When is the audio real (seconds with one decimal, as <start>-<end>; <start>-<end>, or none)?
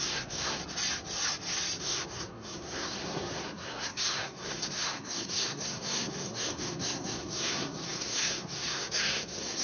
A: 0.6-1.8